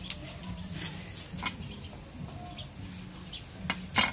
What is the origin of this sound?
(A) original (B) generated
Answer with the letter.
A